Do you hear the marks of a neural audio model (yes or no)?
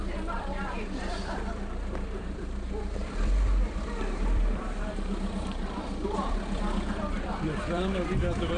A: yes